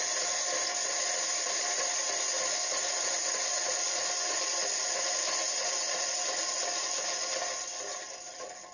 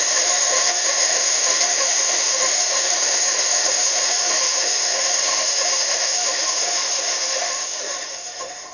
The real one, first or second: first